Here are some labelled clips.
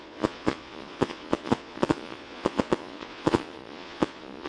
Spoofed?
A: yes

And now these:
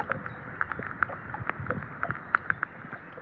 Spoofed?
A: no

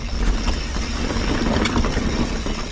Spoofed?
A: no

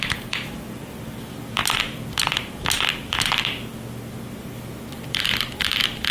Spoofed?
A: no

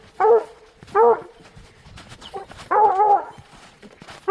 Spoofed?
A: yes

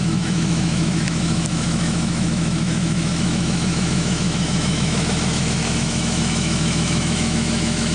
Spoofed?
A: yes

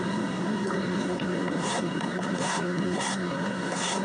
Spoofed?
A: yes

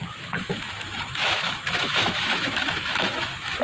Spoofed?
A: yes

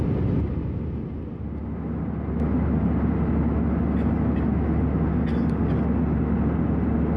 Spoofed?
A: no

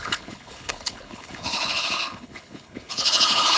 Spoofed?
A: yes